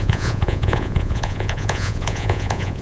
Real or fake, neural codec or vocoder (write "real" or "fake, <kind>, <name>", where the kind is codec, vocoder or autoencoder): fake, vocoder, Vocos